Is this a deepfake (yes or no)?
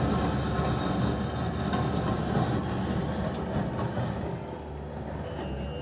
no